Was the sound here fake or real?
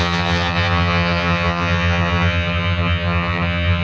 fake